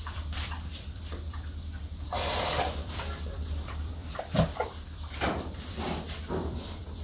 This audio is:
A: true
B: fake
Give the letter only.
B